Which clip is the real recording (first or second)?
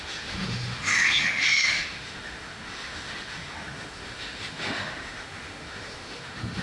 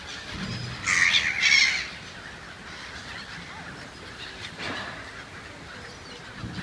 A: second